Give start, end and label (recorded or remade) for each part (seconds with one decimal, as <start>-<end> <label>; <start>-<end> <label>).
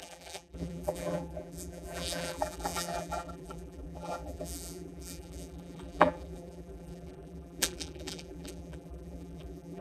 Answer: 0.0-9.8 remade